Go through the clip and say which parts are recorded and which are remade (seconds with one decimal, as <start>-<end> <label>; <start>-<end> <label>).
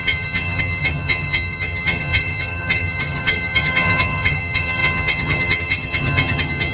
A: 0.0-6.7 remade